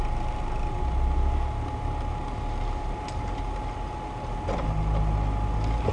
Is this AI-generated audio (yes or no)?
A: no